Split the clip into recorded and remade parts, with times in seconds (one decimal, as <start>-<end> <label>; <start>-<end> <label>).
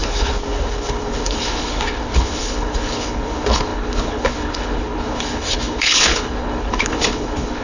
0.0-7.6 remade